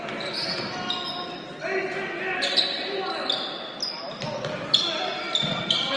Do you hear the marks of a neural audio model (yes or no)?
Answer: no